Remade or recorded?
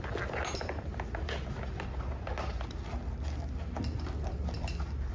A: recorded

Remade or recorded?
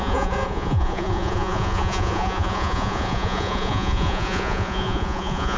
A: remade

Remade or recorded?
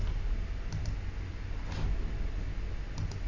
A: recorded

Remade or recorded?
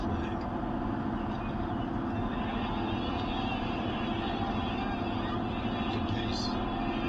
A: recorded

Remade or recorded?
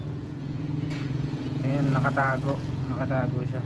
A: remade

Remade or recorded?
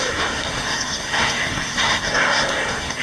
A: remade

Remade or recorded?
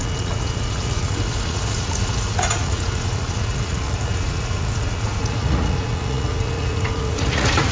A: remade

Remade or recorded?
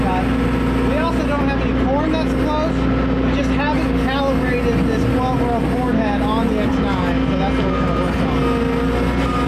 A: recorded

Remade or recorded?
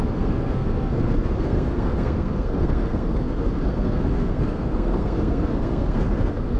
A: remade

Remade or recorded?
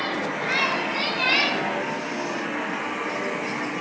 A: recorded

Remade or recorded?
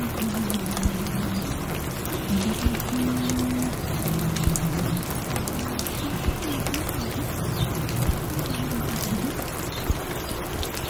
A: recorded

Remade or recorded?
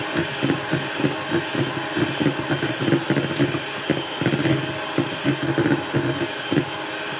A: recorded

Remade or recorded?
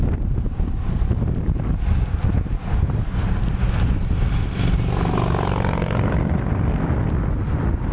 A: recorded